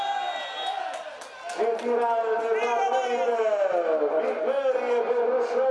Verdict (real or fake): real